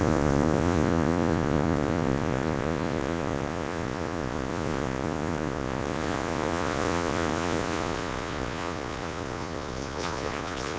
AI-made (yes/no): yes